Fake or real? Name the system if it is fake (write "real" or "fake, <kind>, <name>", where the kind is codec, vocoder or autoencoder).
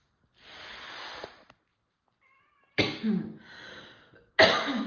real